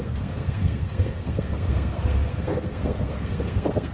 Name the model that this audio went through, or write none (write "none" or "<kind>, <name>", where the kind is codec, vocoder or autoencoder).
codec, SNAC